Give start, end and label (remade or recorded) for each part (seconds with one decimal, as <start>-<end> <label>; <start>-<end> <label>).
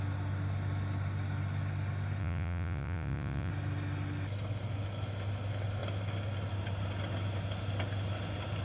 0.0-2.2 recorded; 2.2-3.5 remade; 3.5-8.6 recorded